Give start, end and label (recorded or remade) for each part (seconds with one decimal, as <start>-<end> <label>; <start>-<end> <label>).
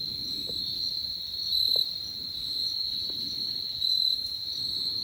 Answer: 0.0-0.6 recorded; 0.6-1.7 remade; 1.7-2.9 recorded; 2.9-5.0 remade